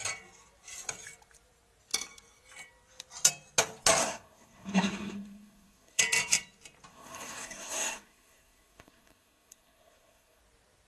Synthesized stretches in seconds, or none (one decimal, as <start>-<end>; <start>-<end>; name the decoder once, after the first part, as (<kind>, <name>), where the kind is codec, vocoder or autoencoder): 4.0-6.0 (codec, SNAC); 6.9-10.4